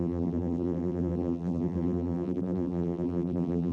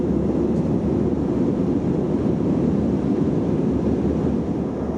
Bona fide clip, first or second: second